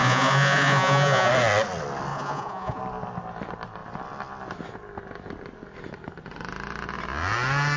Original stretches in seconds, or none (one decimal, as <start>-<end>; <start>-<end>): 1.3-2.1; 2.8-7.8